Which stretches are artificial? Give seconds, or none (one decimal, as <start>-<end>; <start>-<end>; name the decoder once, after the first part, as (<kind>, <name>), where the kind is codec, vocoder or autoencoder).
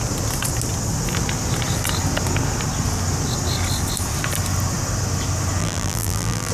5.6-6.5 (vocoder, BigVGAN v2)